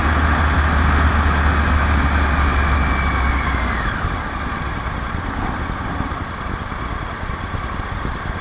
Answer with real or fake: real